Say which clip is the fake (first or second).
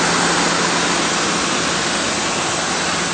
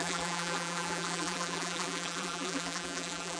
second